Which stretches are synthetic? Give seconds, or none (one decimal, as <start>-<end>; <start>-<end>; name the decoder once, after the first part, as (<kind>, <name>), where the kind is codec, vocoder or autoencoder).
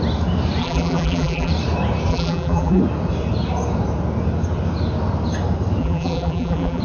0.6-1.5 (vocoder, BigVGAN v2); 2.1-2.8; 5.8-6.8